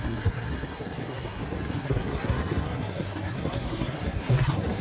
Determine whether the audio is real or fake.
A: fake